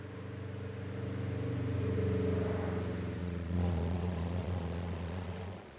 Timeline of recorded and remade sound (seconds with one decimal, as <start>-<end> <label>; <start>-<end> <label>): 0.0-3.2 recorded; 3.2-5.8 remade